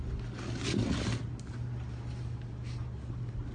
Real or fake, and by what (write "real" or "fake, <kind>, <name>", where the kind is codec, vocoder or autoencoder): real